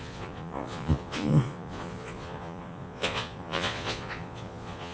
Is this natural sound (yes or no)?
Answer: no